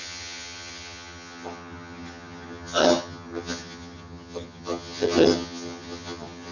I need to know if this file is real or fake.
fake